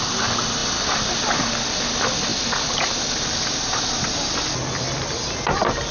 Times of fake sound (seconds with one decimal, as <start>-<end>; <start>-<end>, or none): none